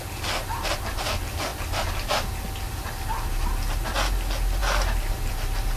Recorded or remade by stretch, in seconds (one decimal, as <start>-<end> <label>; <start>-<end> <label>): 0.0-5.8 recorded